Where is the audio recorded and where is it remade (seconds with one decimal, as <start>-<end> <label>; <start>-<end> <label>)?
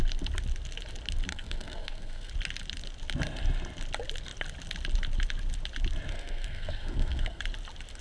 0.0-1.3 recorded; 1.3-2.3 remade; 2.3-6.1 recorded; 6.1-7.4 remade; 7.4-8.0 recorded